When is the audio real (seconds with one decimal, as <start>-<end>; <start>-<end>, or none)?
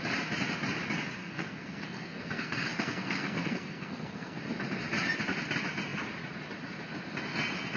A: 0.0-1.2; 4.4-7.8